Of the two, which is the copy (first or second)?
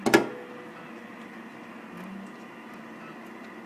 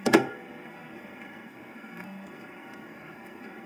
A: second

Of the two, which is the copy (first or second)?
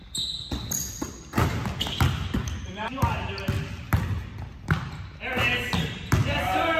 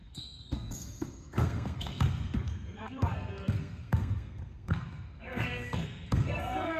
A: second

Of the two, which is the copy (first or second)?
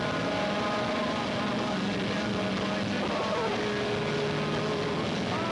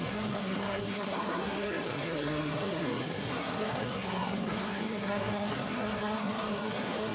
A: second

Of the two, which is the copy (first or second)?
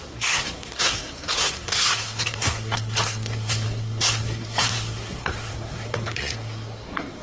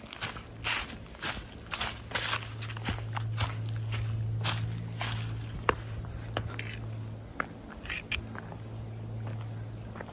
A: first